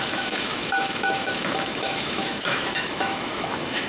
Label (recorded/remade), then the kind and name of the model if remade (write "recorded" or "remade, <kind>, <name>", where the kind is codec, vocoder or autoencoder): remade, autoencoder, DAC-VAE